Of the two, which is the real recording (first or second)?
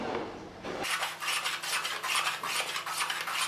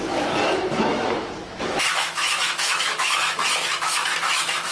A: first